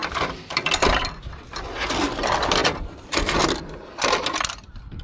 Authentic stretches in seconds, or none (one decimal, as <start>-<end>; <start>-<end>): none